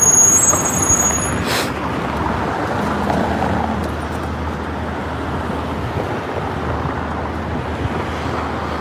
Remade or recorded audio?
recorded